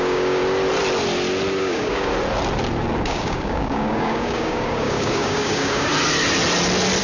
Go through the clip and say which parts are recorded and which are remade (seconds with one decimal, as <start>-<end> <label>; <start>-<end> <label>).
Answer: 0.0-0.4 remade; 0.4-1.6 recorded; 1.6-2.1 remade; 2.1-3.0 recorded; 3.0-5.9 remade; 5.9-7.0 recorded